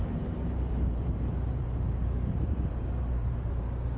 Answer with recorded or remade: remade